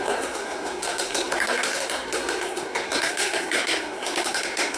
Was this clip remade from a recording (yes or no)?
yes